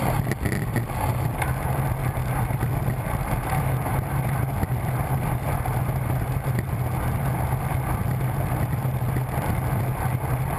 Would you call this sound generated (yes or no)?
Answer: no